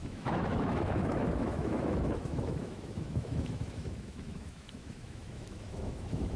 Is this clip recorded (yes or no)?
no